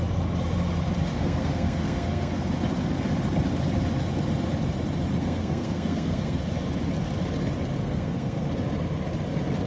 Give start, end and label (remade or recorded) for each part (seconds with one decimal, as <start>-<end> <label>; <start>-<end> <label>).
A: 0.0-1.1 recorded; 1.1-2.3 remade; 2.3-5.2 recorded; 5.2-6.4 remade; 6.4-7.8 recorded; 7.8-8.5 remade; 8.5-9.7 recorded